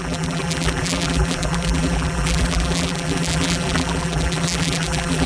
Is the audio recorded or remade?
remade